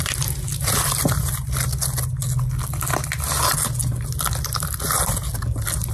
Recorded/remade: recorded